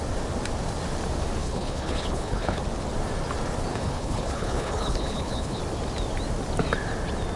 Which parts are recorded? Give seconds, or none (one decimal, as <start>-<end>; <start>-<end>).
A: 0.0-1.4; 2.6-3.7; 5.6-7.4